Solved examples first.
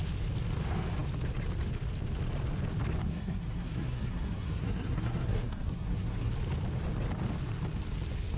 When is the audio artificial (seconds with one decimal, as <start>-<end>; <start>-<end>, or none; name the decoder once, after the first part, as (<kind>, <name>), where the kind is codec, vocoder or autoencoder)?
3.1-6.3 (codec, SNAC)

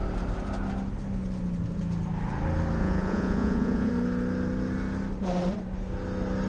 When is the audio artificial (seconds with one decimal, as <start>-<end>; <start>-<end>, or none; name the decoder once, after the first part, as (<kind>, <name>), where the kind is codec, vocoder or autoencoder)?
2.8-3.9 (vocoder, Vocos)

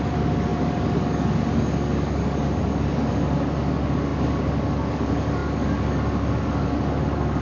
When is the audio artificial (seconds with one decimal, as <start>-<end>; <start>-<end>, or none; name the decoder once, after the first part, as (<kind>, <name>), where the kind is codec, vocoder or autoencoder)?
0.0-7.4 (codec, DAC)

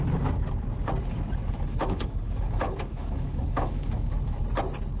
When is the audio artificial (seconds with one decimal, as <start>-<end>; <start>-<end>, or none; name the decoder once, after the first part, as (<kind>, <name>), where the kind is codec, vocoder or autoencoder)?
1.4-4.4 (autoencoder, DAC-VAE)

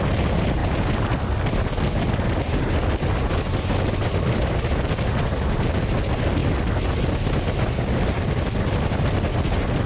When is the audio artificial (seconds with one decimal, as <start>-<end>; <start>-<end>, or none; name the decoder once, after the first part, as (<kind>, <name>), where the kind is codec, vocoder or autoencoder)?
none

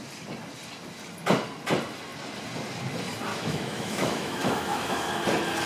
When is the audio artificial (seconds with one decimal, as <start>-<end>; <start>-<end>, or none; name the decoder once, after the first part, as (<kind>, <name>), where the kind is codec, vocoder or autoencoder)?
3.3-5.0 (autoencoder, DAC-VAE)

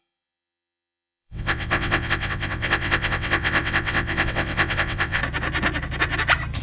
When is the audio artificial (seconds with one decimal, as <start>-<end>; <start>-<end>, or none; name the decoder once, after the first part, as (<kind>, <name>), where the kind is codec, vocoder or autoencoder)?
0.0-5.2 (vocoder, WaveNeXt)

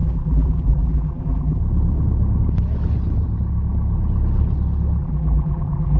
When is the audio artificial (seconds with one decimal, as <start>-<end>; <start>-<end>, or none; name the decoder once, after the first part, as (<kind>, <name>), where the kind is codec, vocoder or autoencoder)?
0.0-1.6 (vocoder, BigVGAN v2); 5.0-6.0